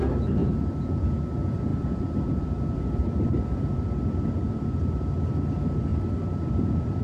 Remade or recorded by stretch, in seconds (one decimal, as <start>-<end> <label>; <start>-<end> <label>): 0.0-0.4 recorded; 0.4-1.0 remade; 1.0-1.7 recorded; 1.7-4.8 remade; 4.8-5.9 recorded; 5.9-7.0 remade